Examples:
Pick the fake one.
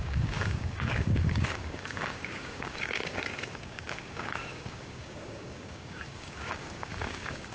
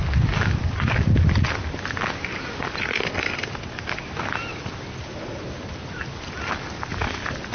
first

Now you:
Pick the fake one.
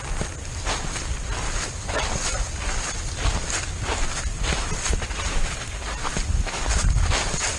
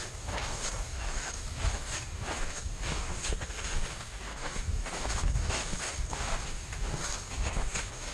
second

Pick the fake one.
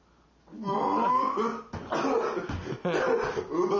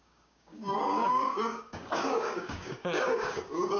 second